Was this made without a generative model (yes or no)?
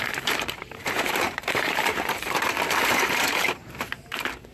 no